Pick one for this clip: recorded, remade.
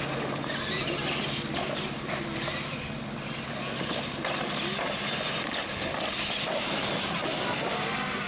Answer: recorded